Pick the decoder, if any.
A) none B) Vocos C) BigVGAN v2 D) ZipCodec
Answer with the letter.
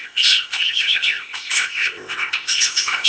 D